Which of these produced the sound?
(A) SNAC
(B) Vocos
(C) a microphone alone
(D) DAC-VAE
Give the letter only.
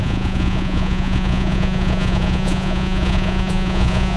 B